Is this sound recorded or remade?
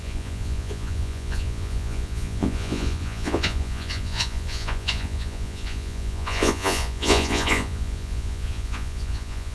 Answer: remade